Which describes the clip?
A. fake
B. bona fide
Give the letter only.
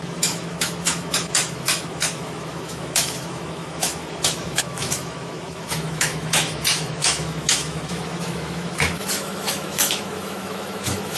A